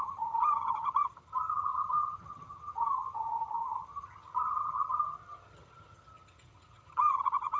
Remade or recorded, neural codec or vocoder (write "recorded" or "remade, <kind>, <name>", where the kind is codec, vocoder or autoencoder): remade, vocoder, HiFi-GAN